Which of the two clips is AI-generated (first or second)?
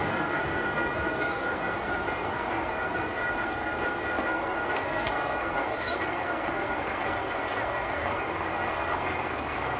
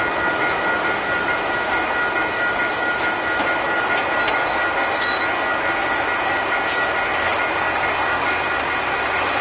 first